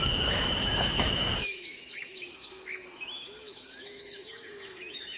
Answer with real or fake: fake